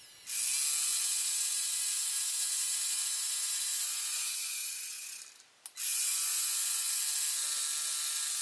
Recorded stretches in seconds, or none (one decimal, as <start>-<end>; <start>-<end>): 0.0-0.9; 5.2-5.9; 7.0-8.4